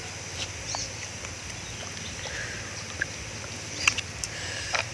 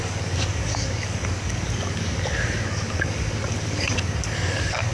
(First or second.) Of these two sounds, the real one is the first